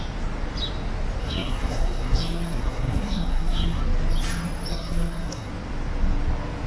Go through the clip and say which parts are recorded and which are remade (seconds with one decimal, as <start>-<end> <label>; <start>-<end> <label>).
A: 0.0-1.2 recorded; 1.2-3.8 remade; 3.8-4.7 recorded; 4.7-5.5 remade; 5.5-6.7 recorded